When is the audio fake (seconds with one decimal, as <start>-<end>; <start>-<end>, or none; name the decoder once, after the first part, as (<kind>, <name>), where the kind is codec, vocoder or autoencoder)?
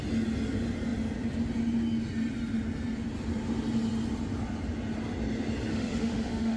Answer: 5.7-6.6 (autoencoder, DAC-VAE)